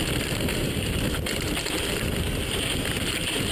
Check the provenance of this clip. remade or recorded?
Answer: recorded